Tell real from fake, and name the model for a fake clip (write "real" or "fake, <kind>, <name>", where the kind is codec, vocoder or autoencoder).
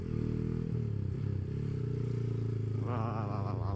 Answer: real